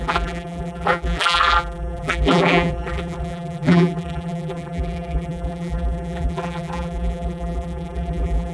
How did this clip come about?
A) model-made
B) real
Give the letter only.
A